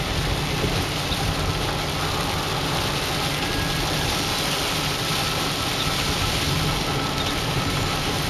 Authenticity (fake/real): real